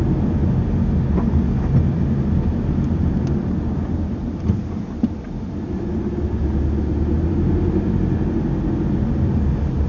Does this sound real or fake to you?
real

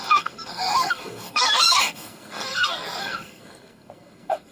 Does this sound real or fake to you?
fake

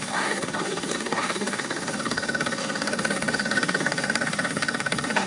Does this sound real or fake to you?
fake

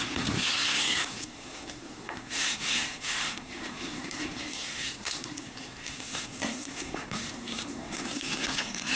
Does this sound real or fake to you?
fake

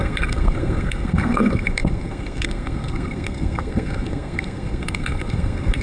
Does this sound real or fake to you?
fake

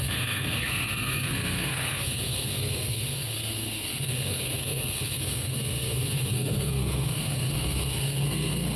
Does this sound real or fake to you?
fake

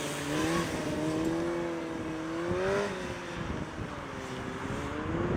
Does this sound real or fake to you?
real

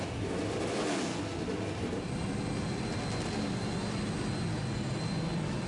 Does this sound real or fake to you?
real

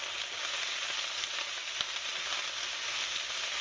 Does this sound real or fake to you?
real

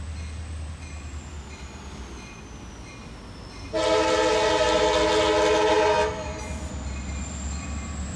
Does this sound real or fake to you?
real